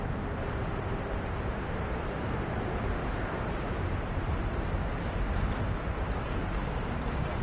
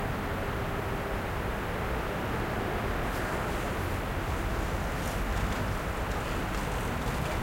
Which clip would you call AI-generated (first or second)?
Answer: first